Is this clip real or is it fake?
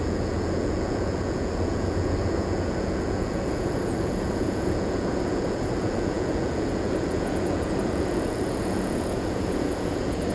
fake